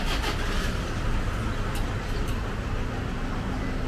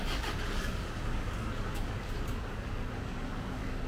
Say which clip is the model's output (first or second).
second